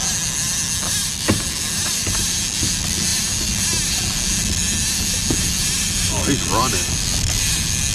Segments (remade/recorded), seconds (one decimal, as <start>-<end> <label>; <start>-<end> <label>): 0.0-7.9 recorded

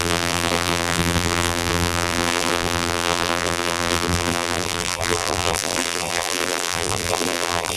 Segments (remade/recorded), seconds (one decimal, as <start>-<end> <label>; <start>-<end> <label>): 0.0-7.8 remade